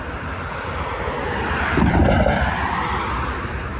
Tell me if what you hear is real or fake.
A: fake